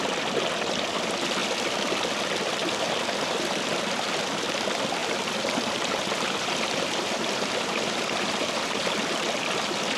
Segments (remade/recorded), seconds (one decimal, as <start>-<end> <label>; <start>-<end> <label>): 0.0-1.4 recorded; 1.4-2.0 remade; 2.0-2.6 recorded; 2.6-3.8 remade; 3.8-5.0 recorded; 5.0-8.5 remade; 8.5-10.0 recorded